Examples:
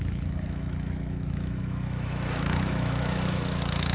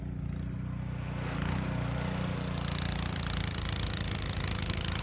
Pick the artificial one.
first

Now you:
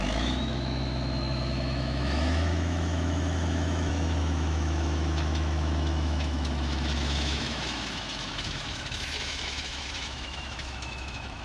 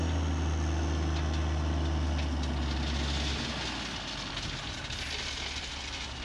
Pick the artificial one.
first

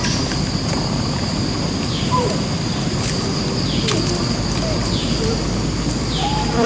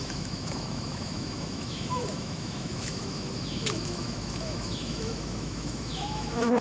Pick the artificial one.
second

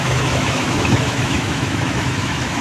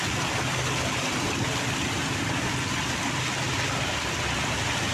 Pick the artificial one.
first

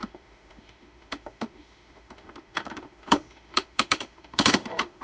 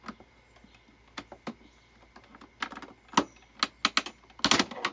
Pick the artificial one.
first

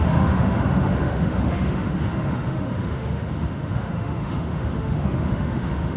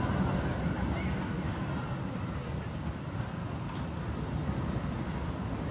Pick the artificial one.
first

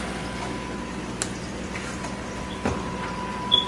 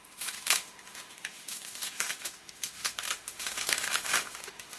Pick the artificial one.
second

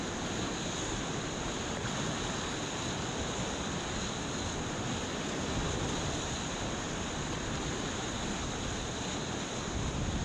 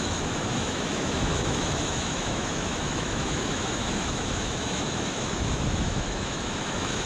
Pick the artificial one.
second